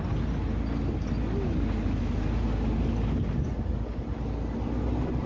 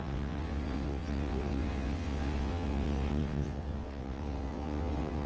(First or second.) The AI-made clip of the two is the second